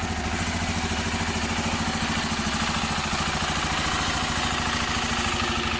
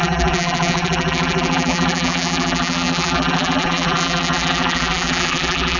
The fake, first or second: second